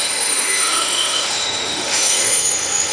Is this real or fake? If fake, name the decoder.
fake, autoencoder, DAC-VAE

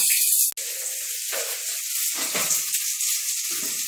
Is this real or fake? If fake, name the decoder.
real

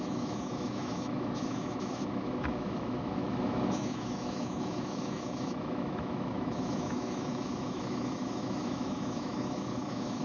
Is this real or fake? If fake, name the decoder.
fake, autoencoder, DAC-VAE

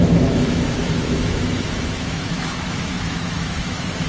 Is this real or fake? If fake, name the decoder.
fake, autoencoder, DAC-VAE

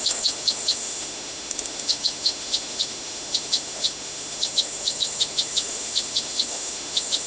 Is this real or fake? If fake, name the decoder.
fake, autoencoder, DAC-VAE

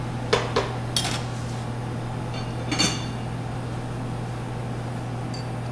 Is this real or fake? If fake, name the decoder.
real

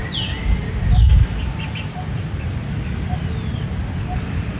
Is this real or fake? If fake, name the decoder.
real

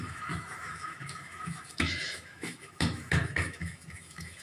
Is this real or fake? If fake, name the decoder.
fake, autoencoder, DAC-VAE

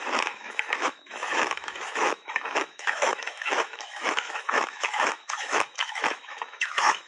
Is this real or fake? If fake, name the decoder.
fake, autoencoder, DAC-VAE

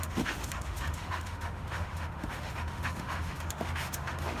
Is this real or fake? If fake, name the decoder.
fake, autoencoder, DAC-VAE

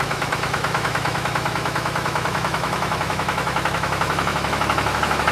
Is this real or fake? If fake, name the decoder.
fake, autoencoder, DAC-VAE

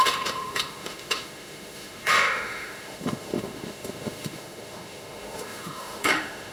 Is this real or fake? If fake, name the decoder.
fake, autoencoder, DAC-VAE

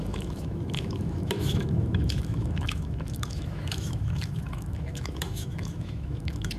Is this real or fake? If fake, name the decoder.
fake, autoencoder, DAC-VAE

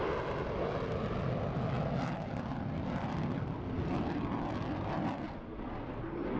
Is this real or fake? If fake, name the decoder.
real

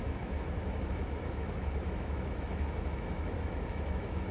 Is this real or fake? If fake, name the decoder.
fake, autoencoder, DAC-VAE